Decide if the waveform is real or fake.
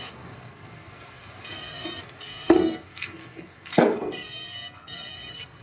fake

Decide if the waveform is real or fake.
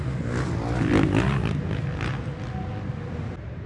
real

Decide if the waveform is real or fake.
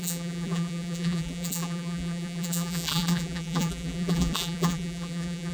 fake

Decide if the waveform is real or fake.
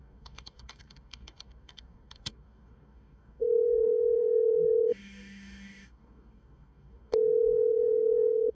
fake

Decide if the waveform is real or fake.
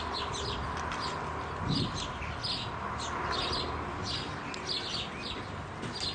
real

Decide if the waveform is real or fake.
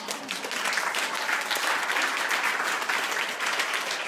real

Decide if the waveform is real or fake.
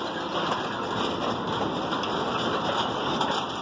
fake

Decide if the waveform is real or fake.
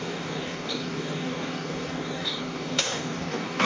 fake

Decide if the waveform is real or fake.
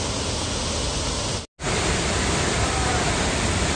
real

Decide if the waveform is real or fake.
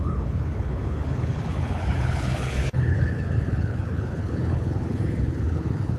fake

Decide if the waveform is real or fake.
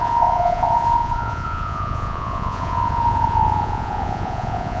fake